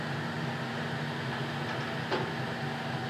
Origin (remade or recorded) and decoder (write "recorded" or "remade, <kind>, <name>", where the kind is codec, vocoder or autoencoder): recorded